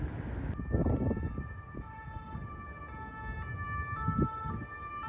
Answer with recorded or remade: recorded